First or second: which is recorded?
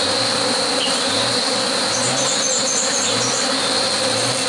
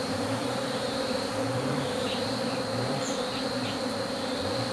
first